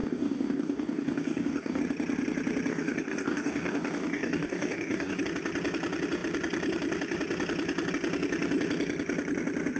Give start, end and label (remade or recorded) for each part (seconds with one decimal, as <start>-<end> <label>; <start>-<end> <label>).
0.0-1.8 remade; 1.8-2.7 recorded; 2.7-5.2 remade; 5.2-9.8 recorded